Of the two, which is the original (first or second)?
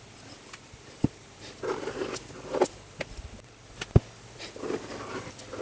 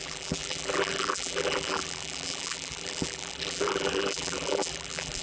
first